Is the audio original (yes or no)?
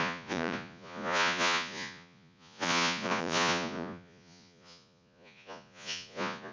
no